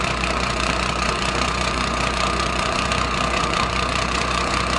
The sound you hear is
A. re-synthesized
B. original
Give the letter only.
A